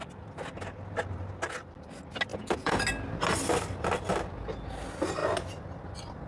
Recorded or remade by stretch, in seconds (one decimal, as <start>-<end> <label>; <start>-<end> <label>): 0.0-2.3 recorded; 2.3-2.8 remade; 2.8-6.3 recorded